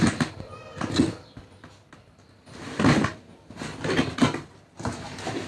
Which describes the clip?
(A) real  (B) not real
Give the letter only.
A